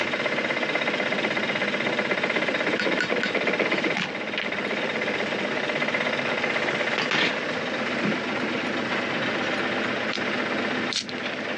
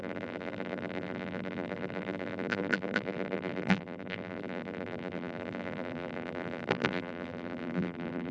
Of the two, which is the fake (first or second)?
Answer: second